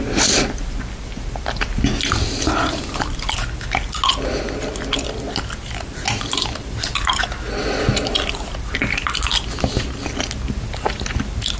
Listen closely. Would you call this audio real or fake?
real